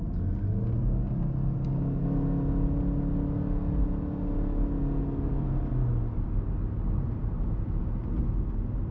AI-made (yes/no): no